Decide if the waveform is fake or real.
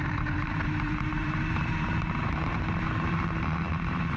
fake